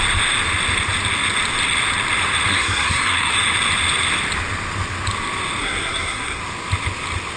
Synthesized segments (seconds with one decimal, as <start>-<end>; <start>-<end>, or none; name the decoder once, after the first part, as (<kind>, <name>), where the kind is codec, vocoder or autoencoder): 2.5-3.3 (codec, SNAC); 5.6-6.4